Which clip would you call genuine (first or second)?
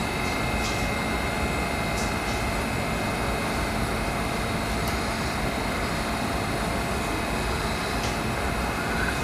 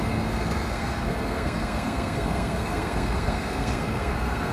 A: first